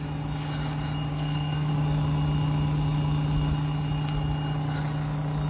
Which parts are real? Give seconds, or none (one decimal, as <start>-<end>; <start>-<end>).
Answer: 0.0-1.1; 1.7-5.5